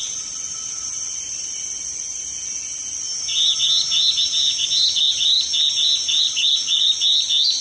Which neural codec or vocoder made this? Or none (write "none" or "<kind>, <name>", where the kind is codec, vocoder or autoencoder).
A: none